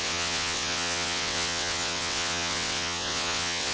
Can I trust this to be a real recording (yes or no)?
no